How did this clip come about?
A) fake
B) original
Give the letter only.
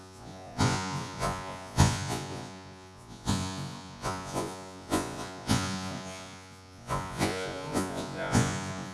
A